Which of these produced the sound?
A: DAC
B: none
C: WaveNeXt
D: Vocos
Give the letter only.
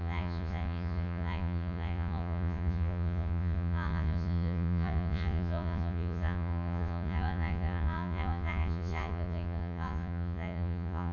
D